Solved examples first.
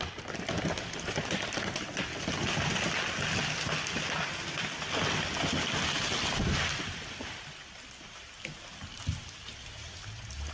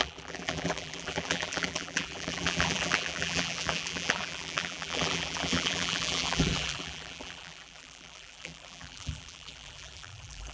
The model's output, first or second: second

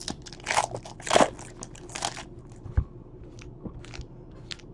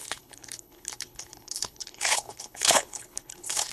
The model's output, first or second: second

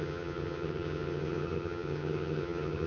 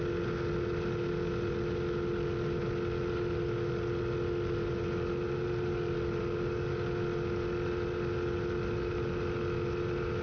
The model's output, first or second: first